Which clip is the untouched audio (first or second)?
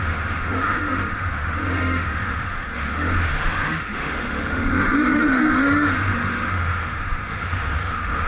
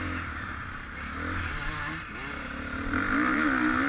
second